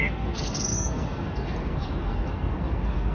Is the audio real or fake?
fake